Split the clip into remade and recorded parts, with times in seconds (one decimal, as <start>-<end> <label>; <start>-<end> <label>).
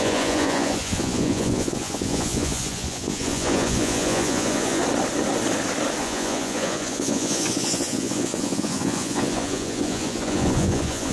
0.0-4.8 remade; 4.8-6.0 recorded; 6.0-11.1 remade